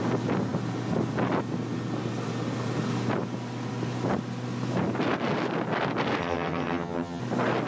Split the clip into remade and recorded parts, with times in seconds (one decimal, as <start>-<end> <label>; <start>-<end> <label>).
0.0-6.2 recorded; 6.2-7.2 remade; 7.2-7.7 recorded

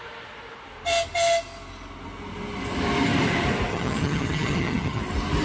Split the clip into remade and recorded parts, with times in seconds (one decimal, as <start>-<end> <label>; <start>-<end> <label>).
0.0-3.7 recorded; 3.7-5.0 remade; 5.0-5.4 recorded

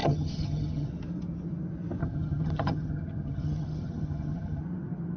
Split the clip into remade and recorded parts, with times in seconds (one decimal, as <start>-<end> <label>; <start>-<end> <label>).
0.0-0.9 remade; 0.9-2.0 recorded; 2.0-4.6 remade; 4.6-5.2 recorded

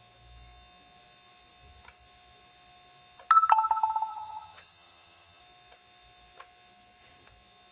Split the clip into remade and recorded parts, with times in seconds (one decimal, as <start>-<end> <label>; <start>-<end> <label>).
0.0-4.1 recorded; 4.1-5.4 remade; 5.4-7.7 recorded

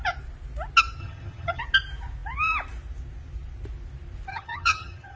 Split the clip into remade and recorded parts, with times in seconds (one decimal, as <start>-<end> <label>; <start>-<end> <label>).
0.0-1.0 recorded; 1.0-1.6 remade; 1.6-4.3 recorded; 4.3-5.2 remade

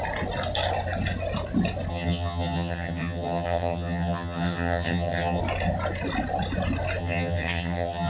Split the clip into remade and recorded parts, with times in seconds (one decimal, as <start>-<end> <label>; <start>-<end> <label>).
0.0-1.9 recorded; 1.9-5.4 remade; 5.4-7.0 recorded; 7.0-8.1 remade

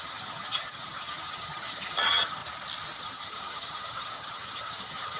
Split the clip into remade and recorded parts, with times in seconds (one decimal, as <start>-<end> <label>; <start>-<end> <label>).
0.0-2.4 remade; 2.4-3.0 recorded; 3.0-5.2 remade